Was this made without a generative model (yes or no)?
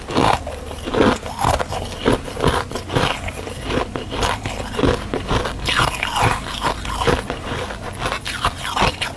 yes